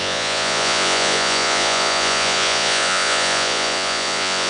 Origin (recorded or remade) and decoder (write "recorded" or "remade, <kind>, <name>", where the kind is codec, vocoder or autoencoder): remade, vocoder, Vocos